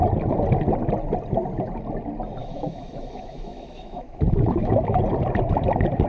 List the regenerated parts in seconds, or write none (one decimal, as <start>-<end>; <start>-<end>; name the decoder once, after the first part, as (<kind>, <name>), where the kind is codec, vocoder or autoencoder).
2.4-5.0 (autoencoder, DAC-VAE)